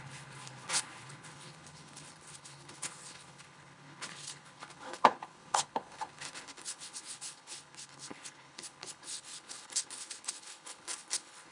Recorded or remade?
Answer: remade